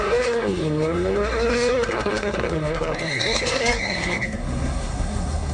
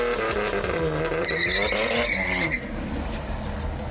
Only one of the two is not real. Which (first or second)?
first